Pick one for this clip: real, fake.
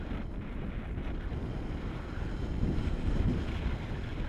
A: real